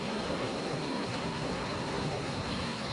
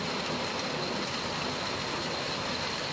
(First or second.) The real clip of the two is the second